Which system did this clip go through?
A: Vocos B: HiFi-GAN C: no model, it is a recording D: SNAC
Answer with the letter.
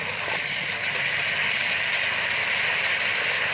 C